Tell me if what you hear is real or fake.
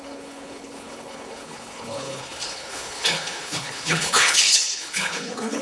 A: fake